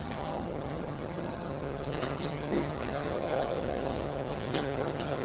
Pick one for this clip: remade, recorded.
remade